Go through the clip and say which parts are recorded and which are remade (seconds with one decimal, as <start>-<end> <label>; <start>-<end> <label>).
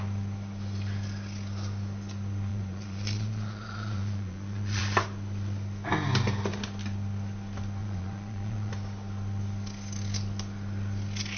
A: 0.0-2.5 recorded; 2.5-4.8 remade; 4.8-7.8 recorded; 7.8-8.7 remade; 8.7-11.4 recorded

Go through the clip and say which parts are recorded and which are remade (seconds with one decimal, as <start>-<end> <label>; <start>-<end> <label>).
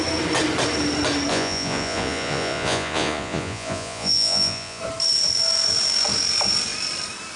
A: 0.0-1.3 recorded; 1.3-4.8 remade; 4.8-7.4 recorded